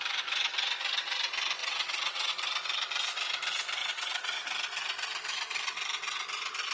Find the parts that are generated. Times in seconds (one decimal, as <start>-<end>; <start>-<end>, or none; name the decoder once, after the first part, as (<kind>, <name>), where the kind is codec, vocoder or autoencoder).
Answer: 1.6-2.3 (vocoder, WaveNeXt); 3.8-4.4